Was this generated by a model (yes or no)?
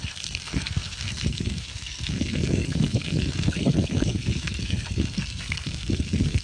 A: yes